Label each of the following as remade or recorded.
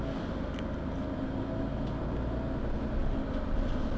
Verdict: recorded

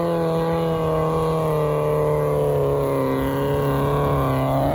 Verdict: recorded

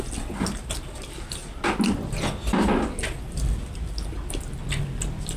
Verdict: recorded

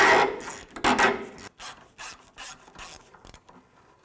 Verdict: recorded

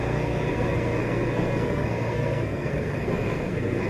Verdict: remade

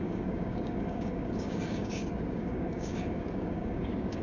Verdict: remade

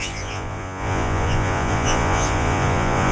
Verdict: remade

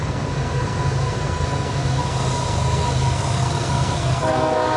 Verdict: remade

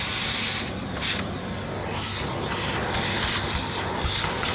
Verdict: recorded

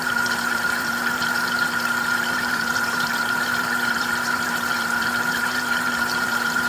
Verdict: remade